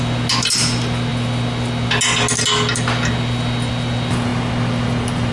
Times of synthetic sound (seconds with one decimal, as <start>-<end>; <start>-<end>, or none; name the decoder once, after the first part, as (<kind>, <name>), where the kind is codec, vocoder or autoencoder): none